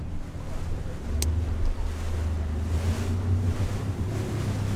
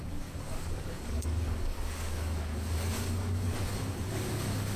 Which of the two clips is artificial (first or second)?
second